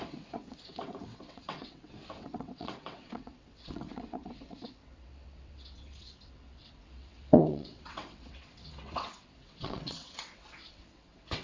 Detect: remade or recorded remade